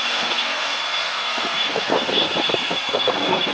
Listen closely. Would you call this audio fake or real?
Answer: fake